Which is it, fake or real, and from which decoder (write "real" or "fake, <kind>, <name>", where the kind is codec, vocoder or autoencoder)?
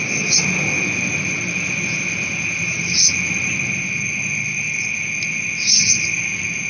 real